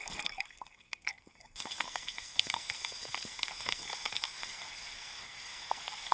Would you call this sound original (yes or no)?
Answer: no